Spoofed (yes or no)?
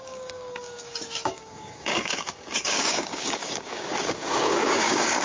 yes